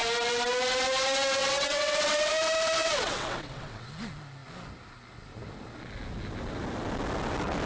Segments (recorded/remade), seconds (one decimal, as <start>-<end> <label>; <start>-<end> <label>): 0.0-1.4 recorded; 1.4-2.3 remade; 2.3-2.8 recorded; 2.8-3.8 remade; 3.8-7.7 recorded